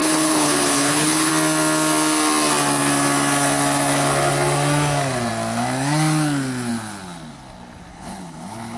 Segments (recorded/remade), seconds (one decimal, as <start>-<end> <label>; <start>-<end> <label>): 0.0-1.3 remade; 1.3-7.9 recorded; 7.9-8.8 remade

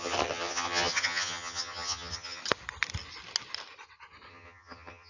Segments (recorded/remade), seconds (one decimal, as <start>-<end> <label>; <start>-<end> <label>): 0.0-2.4 remade; 2.4-4.3 recorded; 4.3-5.1 remade

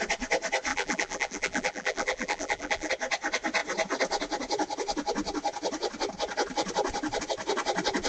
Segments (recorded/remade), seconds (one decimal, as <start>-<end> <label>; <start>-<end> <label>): 0.0-0.7 recorded; 0.7-2.9 remade; 2.9-8.1 recorded